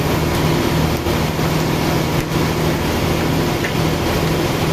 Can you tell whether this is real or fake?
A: real